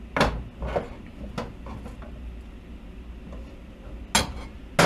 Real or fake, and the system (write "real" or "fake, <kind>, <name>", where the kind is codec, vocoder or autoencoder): real